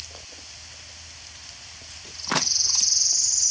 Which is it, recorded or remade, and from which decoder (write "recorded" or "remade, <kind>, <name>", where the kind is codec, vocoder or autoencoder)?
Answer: recorded